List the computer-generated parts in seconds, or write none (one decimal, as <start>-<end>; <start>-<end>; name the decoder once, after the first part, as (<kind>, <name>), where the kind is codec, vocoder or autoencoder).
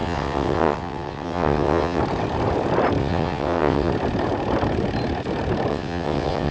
0.0-2.0 (vocoder, WaveNeXt); 3.0-3.9; 5.7-6.5